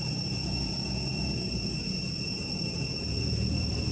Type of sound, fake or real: fake